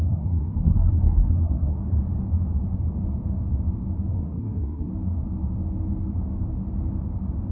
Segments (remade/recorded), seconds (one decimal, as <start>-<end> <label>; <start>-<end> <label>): 0.0-1.8 remade; 1.8-4.1 recorded; 4.1-4.9 remade; 4.9-7.5 recorded